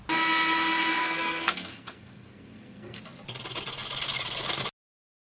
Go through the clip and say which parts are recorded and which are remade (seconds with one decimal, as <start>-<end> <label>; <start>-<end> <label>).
0.0-1.0 recorded; 1.0-3.0 remade; 3.0-5.3 recorded